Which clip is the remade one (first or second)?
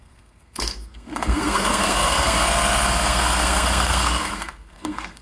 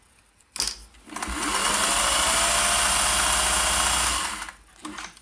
first